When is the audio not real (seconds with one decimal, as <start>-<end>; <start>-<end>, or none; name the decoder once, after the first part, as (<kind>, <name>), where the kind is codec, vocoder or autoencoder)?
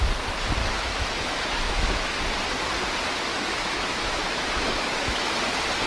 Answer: 0.6-2.2 (autoencoder, DAC-VAE); 3.3-5.3